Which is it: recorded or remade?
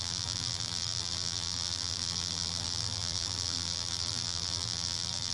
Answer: remade